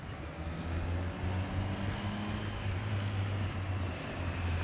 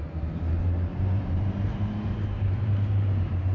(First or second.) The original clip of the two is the first